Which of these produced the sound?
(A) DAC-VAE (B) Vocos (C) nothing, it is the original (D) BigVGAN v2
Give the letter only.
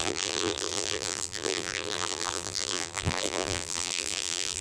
D